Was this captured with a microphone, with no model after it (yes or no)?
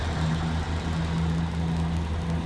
yes